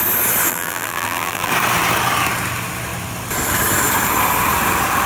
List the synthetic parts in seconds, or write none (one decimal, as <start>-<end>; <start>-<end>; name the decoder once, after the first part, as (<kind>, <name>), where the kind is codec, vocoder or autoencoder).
0.5-1.5 (vocoder, BigVGAN v2)